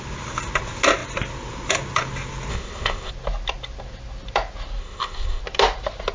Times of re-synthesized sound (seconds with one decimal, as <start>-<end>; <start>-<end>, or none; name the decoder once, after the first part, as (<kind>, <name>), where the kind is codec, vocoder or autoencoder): 2.5-3.1 (codec, ZipCodec); 4.8-5.4